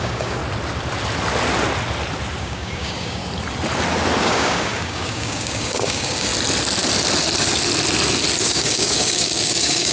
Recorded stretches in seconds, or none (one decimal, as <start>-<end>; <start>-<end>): 0.4-2.4; 3.2-4.2; 6.3-8.4